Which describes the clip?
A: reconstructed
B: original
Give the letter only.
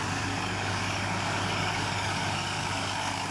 A